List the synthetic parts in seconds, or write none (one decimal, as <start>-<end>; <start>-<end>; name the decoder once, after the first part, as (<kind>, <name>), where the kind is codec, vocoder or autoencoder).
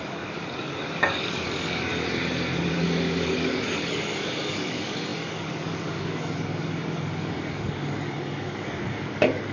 0.0-1.9 (codec, DAC); 2.7-9.5